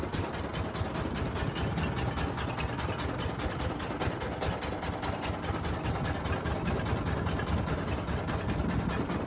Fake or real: real